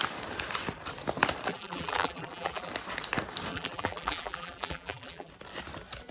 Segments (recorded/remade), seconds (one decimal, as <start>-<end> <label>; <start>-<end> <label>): 0.0-1.5 recorded; 1.5-2.7 remade; 2.7-3.5 recorded; 3.5-5.3 remade; 5.3-6.1 recorded